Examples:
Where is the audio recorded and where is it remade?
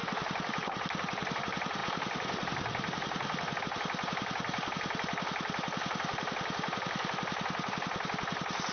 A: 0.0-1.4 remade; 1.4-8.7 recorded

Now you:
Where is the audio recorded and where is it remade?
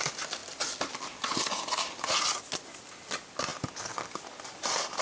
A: 0.0-5.0 recorded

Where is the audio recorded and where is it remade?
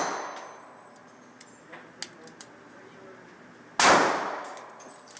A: 0.0-4.0 recorded; 4.0-4.7 remade; 4.7-5.2 recorded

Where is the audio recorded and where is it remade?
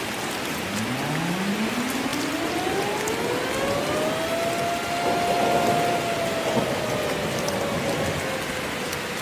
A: 0.0-9.2 recorded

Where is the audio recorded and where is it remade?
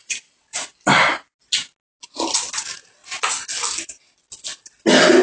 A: 0.0-5.2 recorded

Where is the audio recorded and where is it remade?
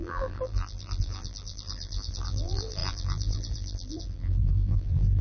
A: 0.0-5.2 remade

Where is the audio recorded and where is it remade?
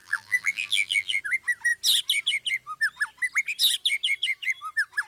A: 0.0-1.2 remade; 1.2-5.1 recorded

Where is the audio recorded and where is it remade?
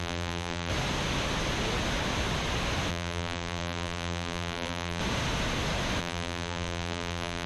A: 0.0-0.7 remade; 0.7-2.9 recorded; 2.9-5.0 remade; 5.0-6.0 recorded; 6.0-7.5 remade